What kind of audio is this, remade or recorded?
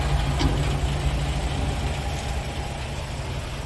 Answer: recorded